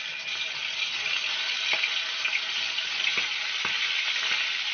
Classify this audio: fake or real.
real